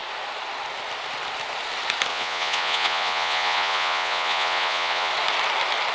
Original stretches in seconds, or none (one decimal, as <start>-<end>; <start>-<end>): 0.0-2.1; 5.1-5.9